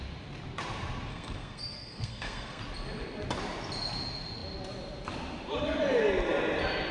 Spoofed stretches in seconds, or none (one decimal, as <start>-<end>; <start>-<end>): 1.1-2.6